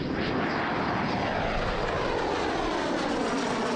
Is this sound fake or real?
real